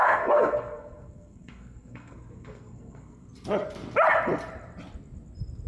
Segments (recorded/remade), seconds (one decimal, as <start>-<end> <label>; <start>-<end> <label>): 0.0-3.3 remade; 3.3-5.7 recorded